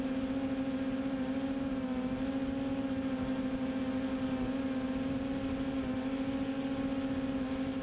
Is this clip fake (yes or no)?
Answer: no